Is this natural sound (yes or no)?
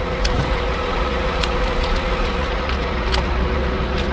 no